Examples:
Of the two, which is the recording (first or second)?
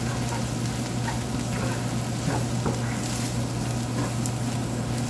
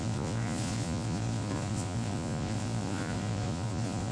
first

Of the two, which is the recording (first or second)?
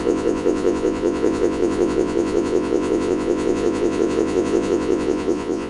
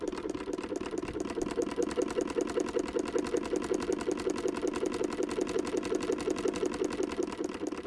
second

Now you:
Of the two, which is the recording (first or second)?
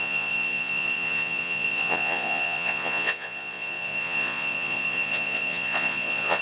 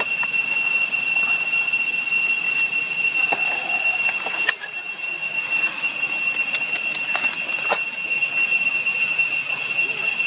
second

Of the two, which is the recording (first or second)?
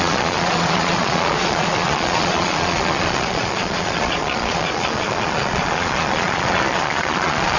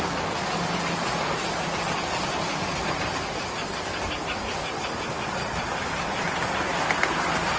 second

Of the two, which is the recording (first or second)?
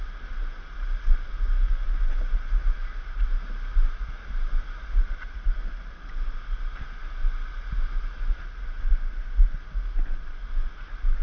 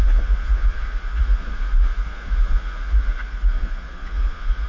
first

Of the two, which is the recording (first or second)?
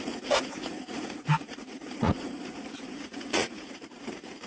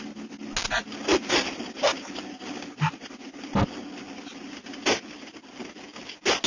second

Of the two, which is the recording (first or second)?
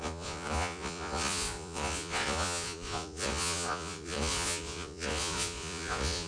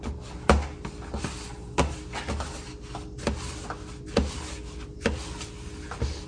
second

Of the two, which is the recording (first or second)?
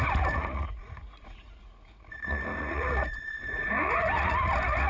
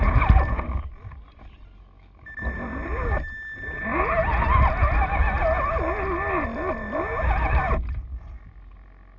second